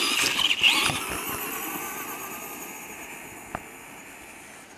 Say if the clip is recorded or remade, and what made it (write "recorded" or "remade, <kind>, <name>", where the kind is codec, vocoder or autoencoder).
recorded